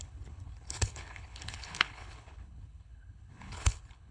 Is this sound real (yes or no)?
no